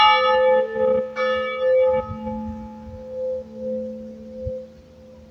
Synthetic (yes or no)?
no